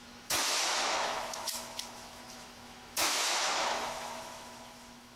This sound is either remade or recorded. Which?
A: remade